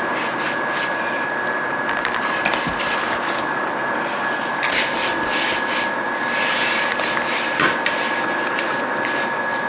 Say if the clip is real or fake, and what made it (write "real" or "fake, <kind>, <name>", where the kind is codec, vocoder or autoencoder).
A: real